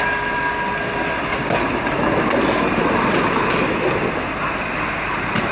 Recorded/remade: recorded